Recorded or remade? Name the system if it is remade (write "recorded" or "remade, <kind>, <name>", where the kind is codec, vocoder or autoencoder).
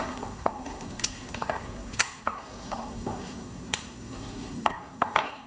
remade, codec, SNAC